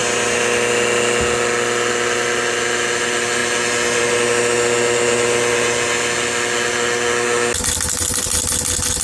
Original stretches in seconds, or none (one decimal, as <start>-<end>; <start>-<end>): 0.0-9.0